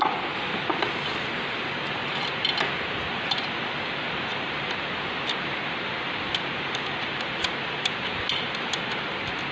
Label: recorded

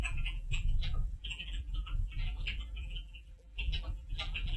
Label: remade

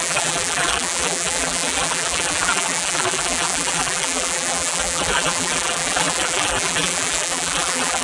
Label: remade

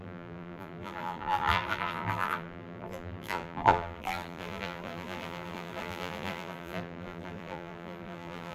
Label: remade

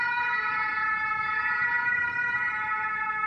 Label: remade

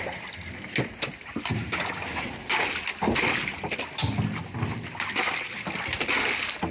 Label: recorded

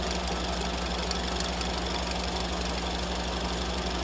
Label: recorded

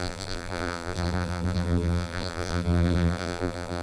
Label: remade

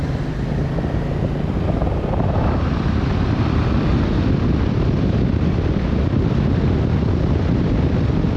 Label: remade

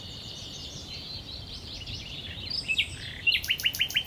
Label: remade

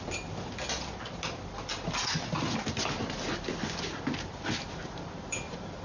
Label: recorded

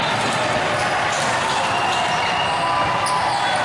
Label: recorded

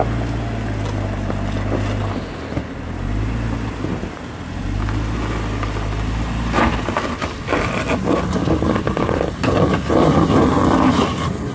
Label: recorded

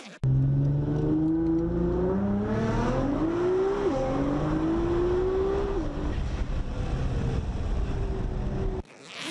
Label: recorded